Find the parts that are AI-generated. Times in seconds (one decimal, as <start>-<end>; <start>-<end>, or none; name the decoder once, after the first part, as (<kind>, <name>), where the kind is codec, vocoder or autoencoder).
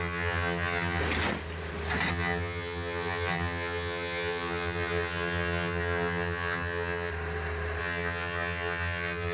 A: 0.0-1.0 (vocoder, HiFi-GAN); 2.1-7.1; 7.8-9.3